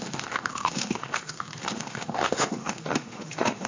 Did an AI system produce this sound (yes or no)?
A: yes